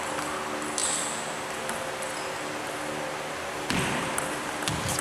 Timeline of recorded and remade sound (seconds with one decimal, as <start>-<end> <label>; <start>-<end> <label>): 0.0-5.0 recorded